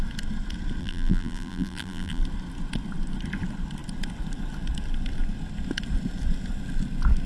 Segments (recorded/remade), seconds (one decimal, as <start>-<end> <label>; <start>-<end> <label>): 0.0-0.8 recorded; 0.8-2.2 remade; 2.2-7.3 recorded